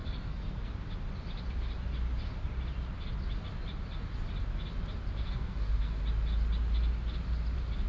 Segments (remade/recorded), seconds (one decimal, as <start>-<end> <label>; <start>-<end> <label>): 0.0-0.7 remade; 0.7-5.2 recorded; 5.2-6.0 remade; 6.0-7.9 recorded

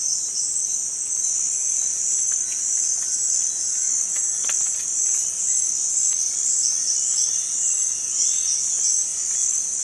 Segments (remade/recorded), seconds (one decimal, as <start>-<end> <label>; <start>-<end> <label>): 0.0-9.8 recorded